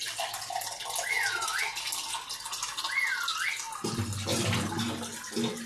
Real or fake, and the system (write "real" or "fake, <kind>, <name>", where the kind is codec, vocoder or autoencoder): real